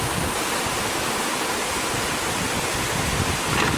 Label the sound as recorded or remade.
recorded